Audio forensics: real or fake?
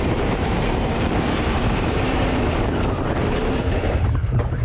fake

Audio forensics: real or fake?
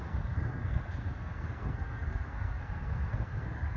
fake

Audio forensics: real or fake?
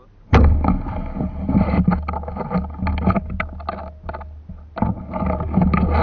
real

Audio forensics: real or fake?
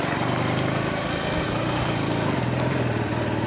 real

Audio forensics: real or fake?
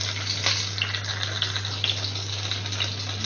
real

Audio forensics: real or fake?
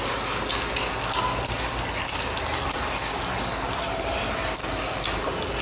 real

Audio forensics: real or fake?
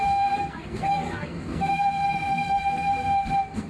fake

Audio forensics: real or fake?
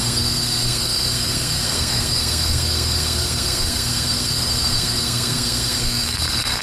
fake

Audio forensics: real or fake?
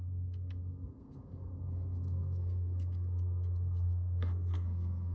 fake